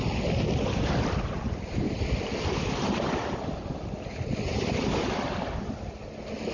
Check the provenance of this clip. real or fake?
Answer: real